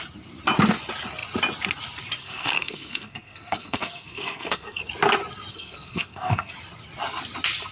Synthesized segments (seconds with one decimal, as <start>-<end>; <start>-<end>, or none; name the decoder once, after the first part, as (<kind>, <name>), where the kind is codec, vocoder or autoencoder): 2.2-4.8 (codec, SNAC); 5.5-6.5